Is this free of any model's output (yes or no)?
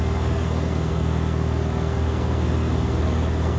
no